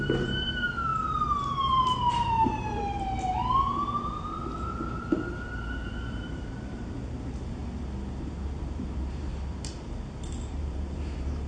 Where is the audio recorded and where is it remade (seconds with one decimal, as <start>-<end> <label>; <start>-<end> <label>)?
0.0-0.9 remade; 0.9-6.0 recorded; 6.0-7.6 remade; 7.6-8.8 recorded; 8.8-9.3 remade; 9.3-10.3 recorded; 10.3-11.5 remade